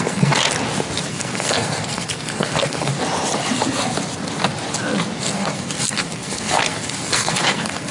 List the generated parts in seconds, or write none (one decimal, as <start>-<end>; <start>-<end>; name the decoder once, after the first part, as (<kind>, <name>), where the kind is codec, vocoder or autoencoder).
0.0-0.4 (codec, SNAC); 1.1-2.9; 5.2-7.9

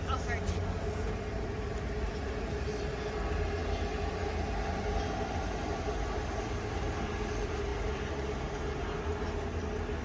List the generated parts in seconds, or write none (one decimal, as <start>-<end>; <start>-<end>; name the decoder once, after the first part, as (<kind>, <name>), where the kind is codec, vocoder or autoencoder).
none

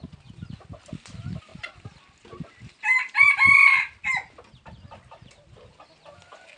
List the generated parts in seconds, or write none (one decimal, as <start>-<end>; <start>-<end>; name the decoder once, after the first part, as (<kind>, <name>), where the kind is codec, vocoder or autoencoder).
none